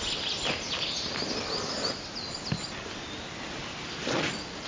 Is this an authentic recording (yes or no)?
yes